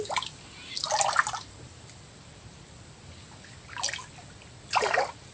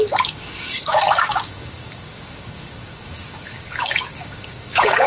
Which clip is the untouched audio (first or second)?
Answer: first